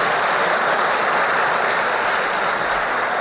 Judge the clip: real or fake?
real